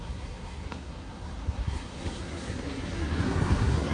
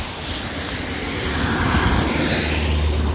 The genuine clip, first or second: second